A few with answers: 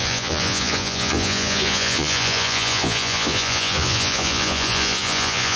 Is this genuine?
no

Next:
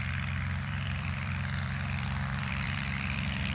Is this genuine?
no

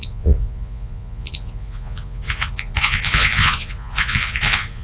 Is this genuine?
no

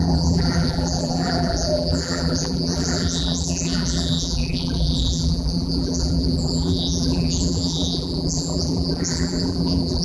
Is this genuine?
no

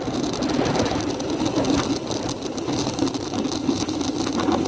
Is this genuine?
yes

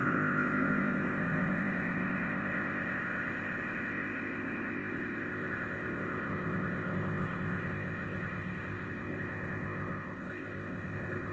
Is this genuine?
no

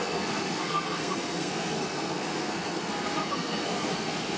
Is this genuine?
no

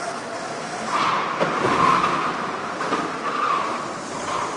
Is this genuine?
yes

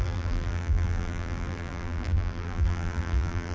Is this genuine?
no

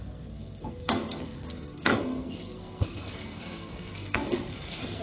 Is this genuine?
no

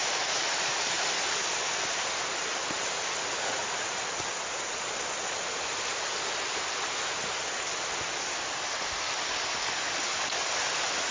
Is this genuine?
yes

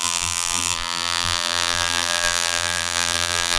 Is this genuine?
no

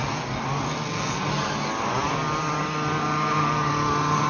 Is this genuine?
yes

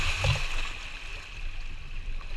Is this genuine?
yes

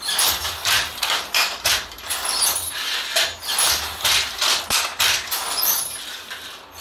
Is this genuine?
yes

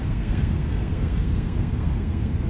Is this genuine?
no